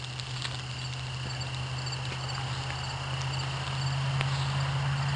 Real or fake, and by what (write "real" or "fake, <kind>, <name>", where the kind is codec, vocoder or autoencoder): real